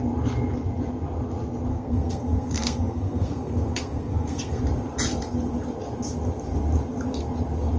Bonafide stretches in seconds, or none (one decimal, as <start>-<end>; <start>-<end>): 0.0-1.7; 4.6-7.8